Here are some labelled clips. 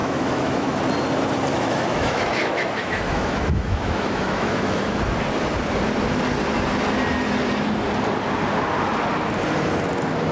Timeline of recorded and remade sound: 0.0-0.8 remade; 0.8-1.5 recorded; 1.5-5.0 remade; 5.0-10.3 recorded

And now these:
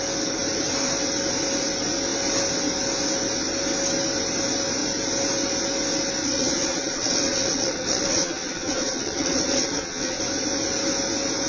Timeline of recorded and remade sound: 0.0-6.2 recorded; 6.2-10.2 remade; 10.2-11.5 recorded

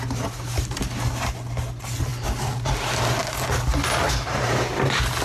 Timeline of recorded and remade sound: 0.0-5.2 recorded